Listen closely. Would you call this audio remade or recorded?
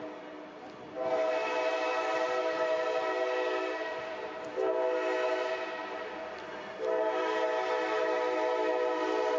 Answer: recorded